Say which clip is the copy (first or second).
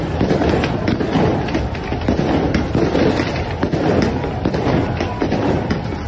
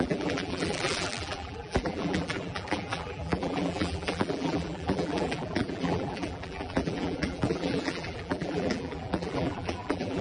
second